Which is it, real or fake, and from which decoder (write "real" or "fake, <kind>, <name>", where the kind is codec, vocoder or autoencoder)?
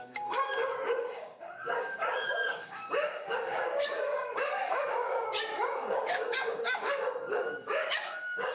fake, codec, DAC